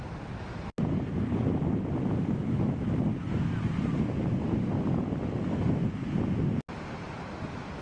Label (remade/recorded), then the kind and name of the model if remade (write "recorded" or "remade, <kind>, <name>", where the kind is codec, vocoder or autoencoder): recorded